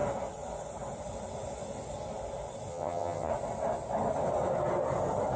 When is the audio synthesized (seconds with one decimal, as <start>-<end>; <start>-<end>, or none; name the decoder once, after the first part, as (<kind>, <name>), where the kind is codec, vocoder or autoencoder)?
2.7-3.3 (vocoder, HiFi-GAN)